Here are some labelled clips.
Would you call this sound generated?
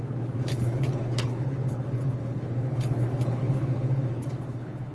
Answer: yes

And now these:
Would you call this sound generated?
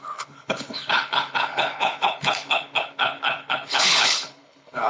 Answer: yes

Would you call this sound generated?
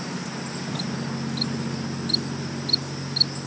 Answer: no